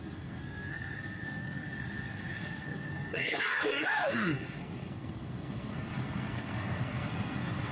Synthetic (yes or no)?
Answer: yes